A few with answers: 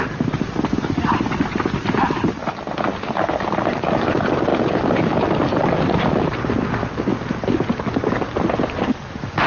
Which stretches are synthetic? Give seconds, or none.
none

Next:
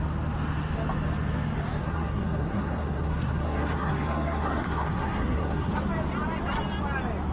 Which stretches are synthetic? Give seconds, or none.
1.8-5.7 (codec, SNAC)

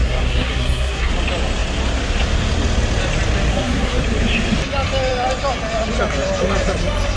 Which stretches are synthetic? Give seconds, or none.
0.0-1.1 (codec, SNAC); 3.5-4.0